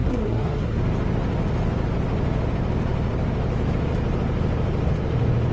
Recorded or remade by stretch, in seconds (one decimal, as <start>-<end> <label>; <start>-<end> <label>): 0.0-0.8 remade; 0.8-5.5 recorded